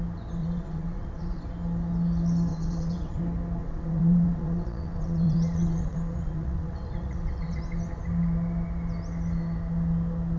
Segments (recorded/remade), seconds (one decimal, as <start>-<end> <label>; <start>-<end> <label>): 0.0-0.4 recorded; 0.4-1.4 remade; 1.4-2.5 recorded; 2.5-3.2 remade; 3.2-3.6 recorded; 3.6-7.6 remade; 7.6-10.4 recorded